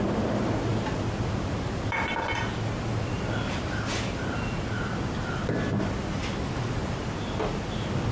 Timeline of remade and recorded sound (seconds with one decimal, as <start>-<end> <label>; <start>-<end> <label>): 0.0-0.7 recorded; 0.7-2.1 remade; 2.1-2.9 recorded; 2.9-3.5 remade; 3.5-6.8 recorded; 6.8-8.1 remade